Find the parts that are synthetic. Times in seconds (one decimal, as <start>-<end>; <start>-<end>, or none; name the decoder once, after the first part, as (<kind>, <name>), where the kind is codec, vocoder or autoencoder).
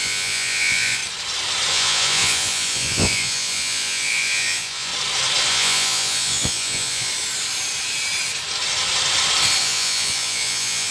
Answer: 0.0-1.0 (vocoder, Vocos); 1.7-4.9; 5.5-7.1; 9.6-10.9